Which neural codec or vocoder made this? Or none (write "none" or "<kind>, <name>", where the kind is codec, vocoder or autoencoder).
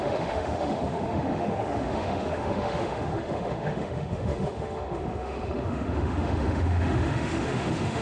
autoencoder, DAC-VAE